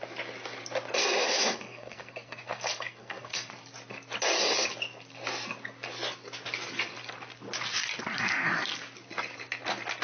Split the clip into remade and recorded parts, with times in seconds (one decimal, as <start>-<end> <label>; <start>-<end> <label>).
0.0-1.0 recorded; 1.0-3.5 remade; 3.5-10.0 recorded